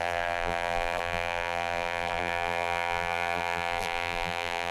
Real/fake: fake